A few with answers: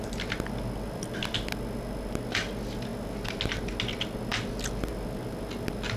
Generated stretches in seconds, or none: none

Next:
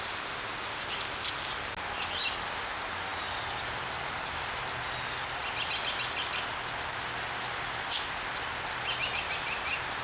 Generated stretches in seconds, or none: none

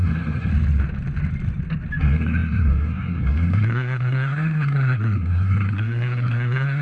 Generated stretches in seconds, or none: 0.0-0.5 (codec, SNAC); 2.0-6.8

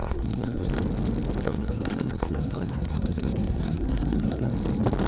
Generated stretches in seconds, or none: 0.0-0.7 (codec, SNAC); 1.4-4.5